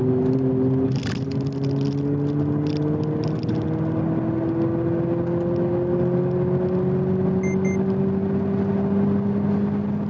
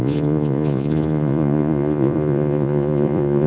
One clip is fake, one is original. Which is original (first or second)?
first